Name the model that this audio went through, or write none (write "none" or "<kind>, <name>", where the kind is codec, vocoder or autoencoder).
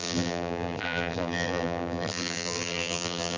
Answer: vocoder, BigVGAN v2